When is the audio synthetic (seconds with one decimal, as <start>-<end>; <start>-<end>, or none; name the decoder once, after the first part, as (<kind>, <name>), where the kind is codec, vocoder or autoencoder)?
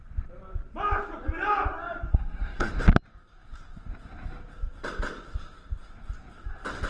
2.1-2.7 (codec, SNAC)